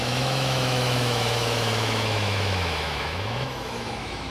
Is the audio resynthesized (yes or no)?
yes